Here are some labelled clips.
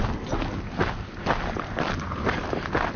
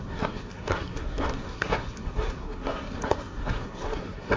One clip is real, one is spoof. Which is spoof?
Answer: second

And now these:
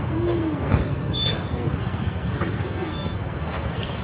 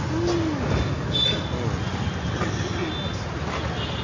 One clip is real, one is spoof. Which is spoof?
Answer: first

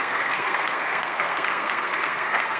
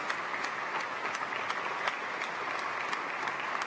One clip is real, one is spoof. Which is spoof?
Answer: first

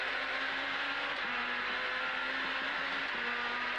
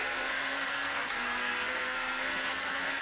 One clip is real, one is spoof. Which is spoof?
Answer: second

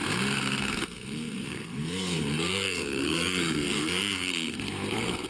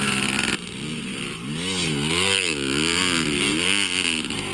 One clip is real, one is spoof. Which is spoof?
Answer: first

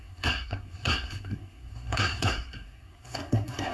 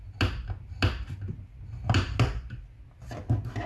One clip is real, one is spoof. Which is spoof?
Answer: first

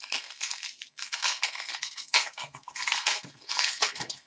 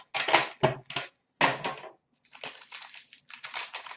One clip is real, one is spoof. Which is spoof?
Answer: first